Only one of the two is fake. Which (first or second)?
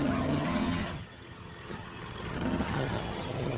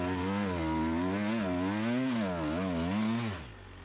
first